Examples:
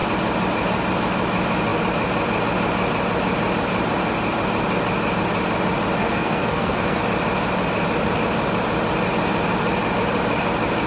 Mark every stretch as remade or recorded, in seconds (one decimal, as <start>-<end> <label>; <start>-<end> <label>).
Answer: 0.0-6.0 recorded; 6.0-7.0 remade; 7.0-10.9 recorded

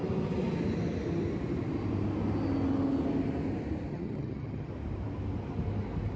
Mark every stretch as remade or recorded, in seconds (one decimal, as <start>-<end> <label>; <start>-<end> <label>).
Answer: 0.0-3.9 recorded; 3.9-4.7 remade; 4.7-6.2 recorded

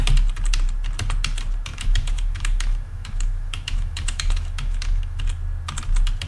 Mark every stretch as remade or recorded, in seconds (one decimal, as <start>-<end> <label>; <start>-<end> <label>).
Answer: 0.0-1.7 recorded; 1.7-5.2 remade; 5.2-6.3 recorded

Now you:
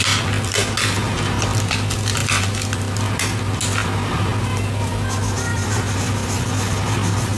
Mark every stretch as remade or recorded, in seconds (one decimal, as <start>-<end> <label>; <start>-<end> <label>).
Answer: 0.0-5.5 recorded; 5.5-6.5 remade; 6.5-7.4 recorded

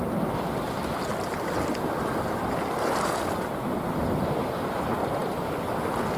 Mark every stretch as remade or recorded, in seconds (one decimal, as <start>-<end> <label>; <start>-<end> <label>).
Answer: 0.0-1.1 recorded; 1.1-4.0 remade; 4.0-6.2 recorded